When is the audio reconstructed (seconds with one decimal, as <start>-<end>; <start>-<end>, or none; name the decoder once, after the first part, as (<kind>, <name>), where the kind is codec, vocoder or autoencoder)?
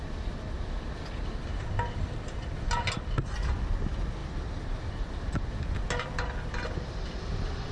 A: none